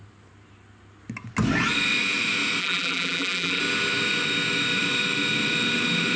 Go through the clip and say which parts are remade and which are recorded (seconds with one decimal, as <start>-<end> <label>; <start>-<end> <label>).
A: 0.0-2.6 recorded; 2.6-3.6 remade; 3.6-6.2 recorded